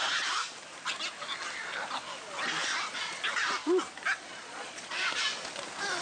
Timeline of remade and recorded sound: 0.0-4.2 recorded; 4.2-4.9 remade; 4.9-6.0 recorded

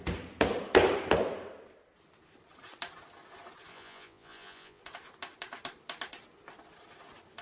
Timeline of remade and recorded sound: 0.0-3.7 recorded; 3.7-4.8 remade; 4.8-7.4 recorded

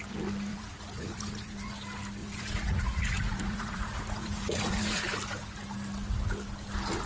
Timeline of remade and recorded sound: 0.0-0.5 recorded; 0.5-1.7 remade; 1.7-2.2 recorded; 2.2-5.0 remade; 5.0-7.1 recorded

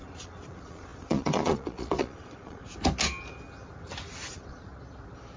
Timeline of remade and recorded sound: 0.0-2.6 remade; 2.6-4.3 recorded; 4.3-4.7 remade; 4.7-5.4 recorded

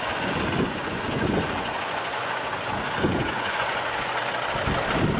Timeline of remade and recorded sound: 0.0-4.2 remade; 4.2-5.2 recorded